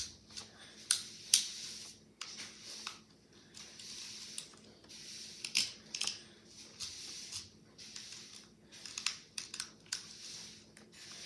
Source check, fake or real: real